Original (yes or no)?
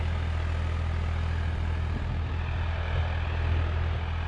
yes